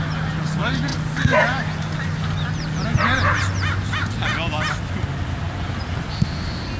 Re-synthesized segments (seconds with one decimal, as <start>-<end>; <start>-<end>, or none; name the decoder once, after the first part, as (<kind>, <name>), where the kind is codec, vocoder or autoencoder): none